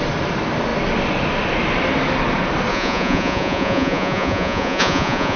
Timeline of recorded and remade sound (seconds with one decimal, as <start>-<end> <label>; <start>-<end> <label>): 0.0-2.7 recorded; 2.7-5.4 remade